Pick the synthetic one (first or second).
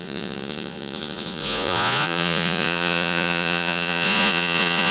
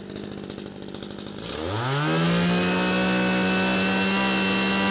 first